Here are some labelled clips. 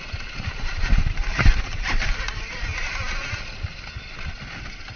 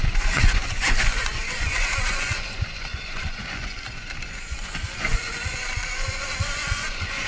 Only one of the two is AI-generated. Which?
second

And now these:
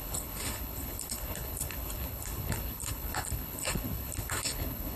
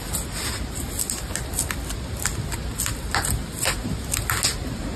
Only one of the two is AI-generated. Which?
first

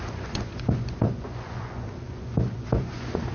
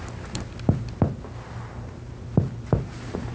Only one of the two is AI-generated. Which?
first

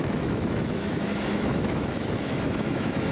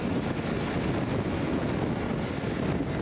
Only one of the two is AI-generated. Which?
first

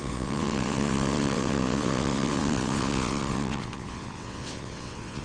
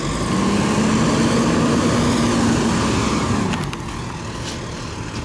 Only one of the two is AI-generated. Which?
first